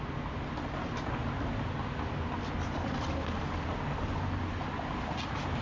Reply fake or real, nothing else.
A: real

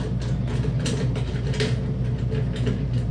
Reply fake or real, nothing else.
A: real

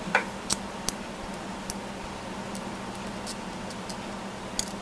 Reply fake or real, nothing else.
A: real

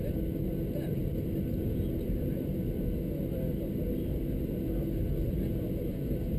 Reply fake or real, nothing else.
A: real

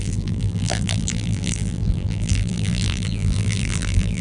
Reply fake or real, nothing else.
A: fake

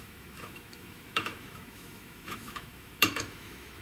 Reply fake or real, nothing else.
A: fake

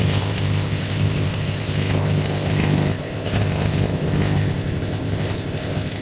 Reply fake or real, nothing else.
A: fake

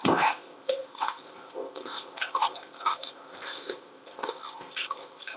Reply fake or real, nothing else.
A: fake